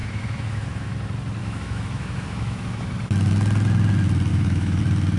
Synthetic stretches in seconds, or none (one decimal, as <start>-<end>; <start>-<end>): 0.0-0.9; 1.4-2.9; 4.3-4.8